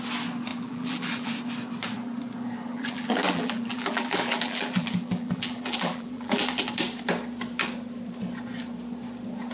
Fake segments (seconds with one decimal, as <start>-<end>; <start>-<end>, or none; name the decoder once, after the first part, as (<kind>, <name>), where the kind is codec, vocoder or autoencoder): 0.5-1.3 (vocoder, BigVGAN v2); 2.7-6.7